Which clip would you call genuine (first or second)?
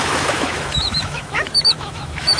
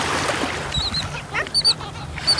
second